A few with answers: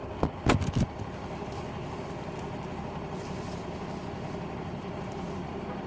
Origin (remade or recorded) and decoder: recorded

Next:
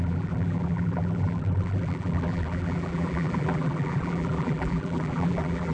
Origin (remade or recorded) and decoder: remade, vocoder, BigVGAN v2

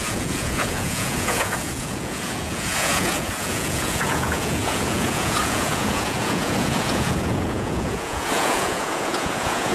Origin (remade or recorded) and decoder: remade, vocoder, Vocos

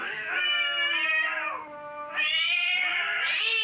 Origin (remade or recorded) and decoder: recorded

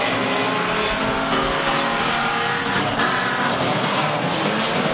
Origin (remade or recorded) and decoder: recorded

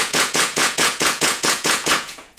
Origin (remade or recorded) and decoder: remade, vocoder, Vocos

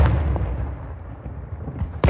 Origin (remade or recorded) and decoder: recorded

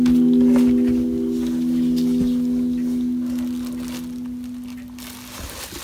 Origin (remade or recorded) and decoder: recorded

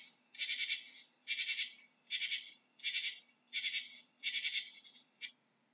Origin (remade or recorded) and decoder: recorded